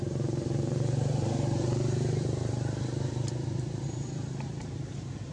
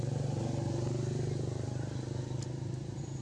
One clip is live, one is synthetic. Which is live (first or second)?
second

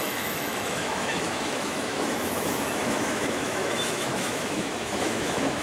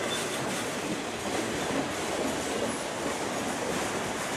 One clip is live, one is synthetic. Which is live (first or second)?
second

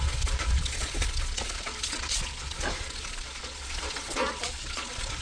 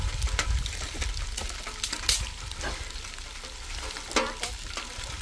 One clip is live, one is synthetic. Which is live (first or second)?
second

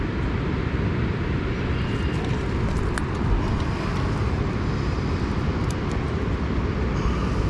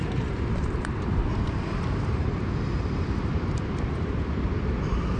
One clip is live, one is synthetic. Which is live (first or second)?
first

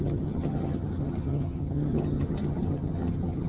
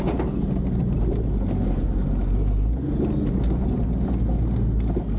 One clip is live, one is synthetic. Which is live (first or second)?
second